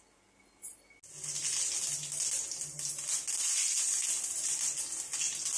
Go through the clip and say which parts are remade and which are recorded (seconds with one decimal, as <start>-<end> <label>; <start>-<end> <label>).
0.0-5.6 recorded

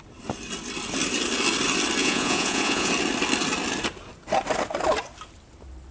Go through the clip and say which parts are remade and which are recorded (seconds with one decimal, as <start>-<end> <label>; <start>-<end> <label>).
0.0-2.0 recorded; 2.0-2.9 remade; 2.9-5.9 recorded

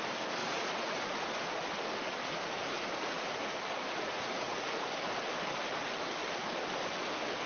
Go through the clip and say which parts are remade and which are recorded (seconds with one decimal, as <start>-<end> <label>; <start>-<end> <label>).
0.0-0.4 recorded; 0.4-1.4 remade; 1.4-2.2 recorded; 2.2-4.8 remade; 4.8-7.5 recorded

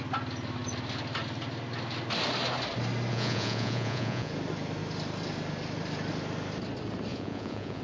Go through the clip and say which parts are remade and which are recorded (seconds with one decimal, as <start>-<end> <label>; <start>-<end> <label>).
0.0-3.1 recorded; 3.1-4.3 remade; 4.3-7.1 recorded; 7.1-7.8 remade

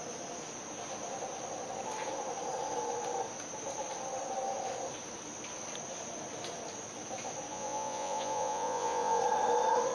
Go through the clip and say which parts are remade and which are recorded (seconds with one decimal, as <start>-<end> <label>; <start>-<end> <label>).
0.0-7.5 recorded; 7.5-9.2 remade; 9.2-9.9 recorded

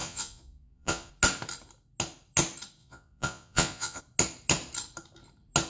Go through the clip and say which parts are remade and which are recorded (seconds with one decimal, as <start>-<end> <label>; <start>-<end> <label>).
0.0-1.1 remade; 1.1-2.8 recorded; 2.8-4.0 remade; 4.0-5.7 recorded

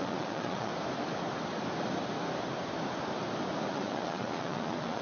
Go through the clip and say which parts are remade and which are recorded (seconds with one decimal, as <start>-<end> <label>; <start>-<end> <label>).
0.0-0.7 remade; 0.7-3.7 recorded; 3.7-5.0 remade